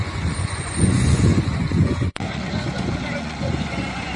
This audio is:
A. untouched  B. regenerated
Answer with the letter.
B